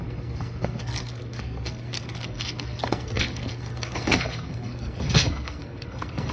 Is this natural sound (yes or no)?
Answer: no